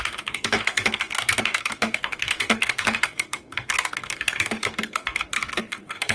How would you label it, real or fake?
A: fake